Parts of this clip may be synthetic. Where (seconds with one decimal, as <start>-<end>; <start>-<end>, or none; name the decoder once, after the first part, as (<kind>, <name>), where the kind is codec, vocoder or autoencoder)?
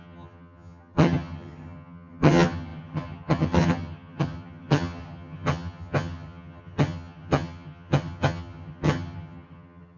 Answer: 0.0-10.0 (vocoder, HiFi-GAN)